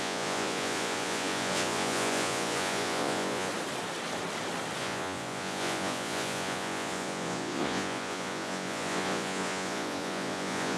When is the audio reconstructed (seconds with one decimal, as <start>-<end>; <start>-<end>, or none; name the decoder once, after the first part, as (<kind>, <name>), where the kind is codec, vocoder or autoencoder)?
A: 0.0-3.5 (vocoder, Vocos); 4.8-10.8